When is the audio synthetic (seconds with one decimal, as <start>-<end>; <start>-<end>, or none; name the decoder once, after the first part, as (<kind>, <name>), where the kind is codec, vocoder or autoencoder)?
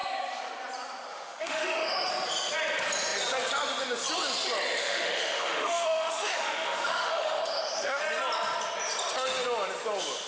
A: 1.1-2.1 (autoencoder, DAC-VAE); 4.8-8.0